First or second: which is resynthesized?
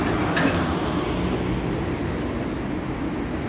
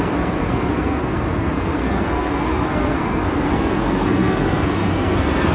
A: second